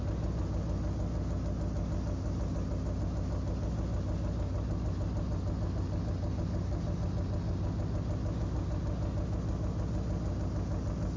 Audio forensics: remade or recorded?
recorded